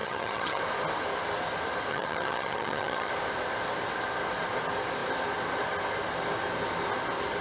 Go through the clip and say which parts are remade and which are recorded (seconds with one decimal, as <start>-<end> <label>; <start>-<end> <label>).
0.0-0.6 remade; 0.6-1.9 recorded; 1.9-3.1 remade; 3.1-7.4 recorded